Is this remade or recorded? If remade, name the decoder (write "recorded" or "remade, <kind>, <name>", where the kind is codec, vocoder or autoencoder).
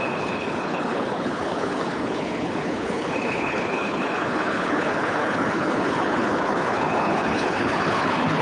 remade, codec, HILCodec